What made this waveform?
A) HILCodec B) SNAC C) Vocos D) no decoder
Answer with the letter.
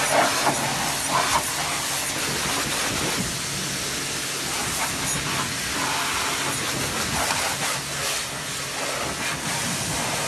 D